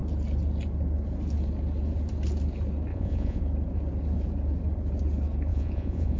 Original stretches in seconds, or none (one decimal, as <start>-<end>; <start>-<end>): 0.0-2.9; 3.4-5.5